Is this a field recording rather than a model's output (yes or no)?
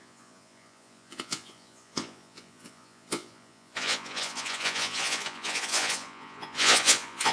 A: no